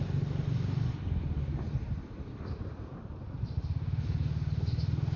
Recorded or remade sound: recorded